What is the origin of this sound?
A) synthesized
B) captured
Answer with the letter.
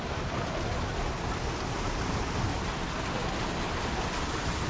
B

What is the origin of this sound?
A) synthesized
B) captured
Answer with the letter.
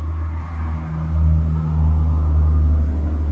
B